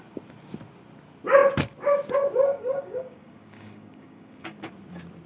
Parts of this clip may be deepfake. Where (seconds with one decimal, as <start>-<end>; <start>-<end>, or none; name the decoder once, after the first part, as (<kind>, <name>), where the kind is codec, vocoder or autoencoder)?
2.5-4.7 (codec, DAC)